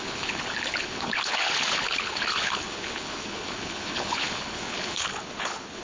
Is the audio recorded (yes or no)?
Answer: no